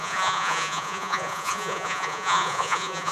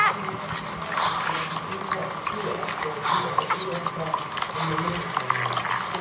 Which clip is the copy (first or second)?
first